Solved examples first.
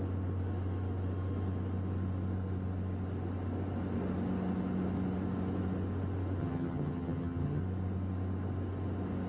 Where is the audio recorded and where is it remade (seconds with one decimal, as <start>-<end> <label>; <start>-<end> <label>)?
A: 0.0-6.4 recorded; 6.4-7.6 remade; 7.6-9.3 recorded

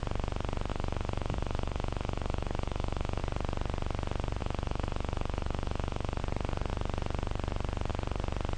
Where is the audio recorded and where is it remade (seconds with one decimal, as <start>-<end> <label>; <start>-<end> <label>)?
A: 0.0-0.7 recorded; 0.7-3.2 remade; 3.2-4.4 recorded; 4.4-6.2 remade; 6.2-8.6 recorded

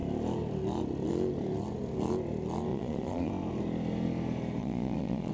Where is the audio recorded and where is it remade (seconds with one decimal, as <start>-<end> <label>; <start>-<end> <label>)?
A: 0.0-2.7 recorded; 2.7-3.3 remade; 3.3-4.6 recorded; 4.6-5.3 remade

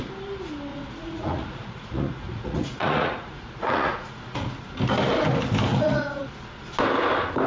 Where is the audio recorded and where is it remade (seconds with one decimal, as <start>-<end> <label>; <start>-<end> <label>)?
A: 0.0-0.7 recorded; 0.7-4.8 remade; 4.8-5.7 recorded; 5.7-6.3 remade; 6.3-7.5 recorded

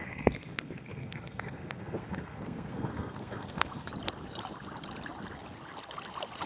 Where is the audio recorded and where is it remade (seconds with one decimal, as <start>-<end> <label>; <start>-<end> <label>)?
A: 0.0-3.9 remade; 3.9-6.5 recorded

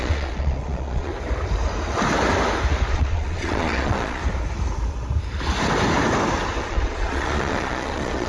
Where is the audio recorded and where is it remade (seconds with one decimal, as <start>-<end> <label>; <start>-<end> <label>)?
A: 0.0-1.1 remade; 1.1-2.9 recorded; 2.9-4.2 remade; 4.2-6.6 recorded; 6.6-8.3 remade

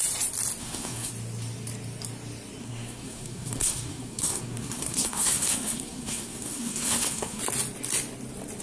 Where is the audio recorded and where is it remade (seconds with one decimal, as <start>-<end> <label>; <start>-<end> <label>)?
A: 0.0-0.6 recorded; 0.6-1.1 remade; 1.1-2.6 recorded; 2.6-7.4 remade; 7.4-8.6 recorded